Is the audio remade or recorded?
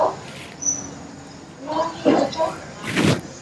recorded